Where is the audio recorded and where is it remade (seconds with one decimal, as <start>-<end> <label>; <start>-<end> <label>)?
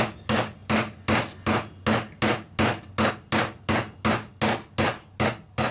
0.0-5.7 recorded